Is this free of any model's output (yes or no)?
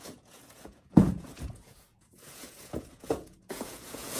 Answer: no